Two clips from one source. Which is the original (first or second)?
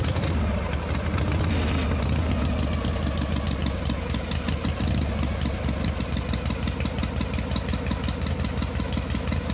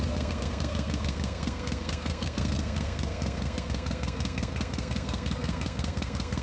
first